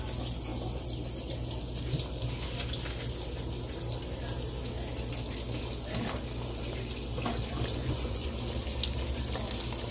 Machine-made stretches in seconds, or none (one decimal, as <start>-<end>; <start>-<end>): 7.8-8.3